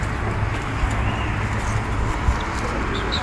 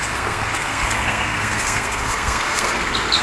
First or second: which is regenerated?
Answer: second